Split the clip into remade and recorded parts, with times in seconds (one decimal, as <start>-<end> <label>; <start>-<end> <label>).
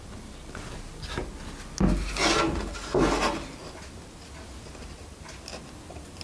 0.0-6.2 recorded